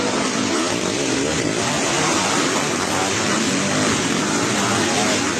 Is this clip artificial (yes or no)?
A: no